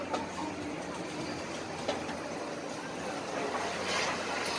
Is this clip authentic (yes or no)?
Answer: yes